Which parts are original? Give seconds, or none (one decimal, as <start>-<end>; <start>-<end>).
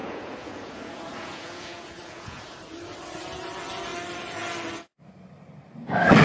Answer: 2.6-6.2